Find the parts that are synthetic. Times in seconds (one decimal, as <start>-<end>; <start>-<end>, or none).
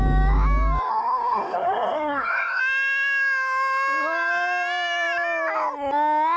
0.9-2.6